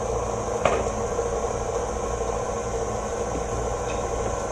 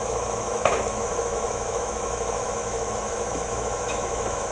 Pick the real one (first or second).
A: first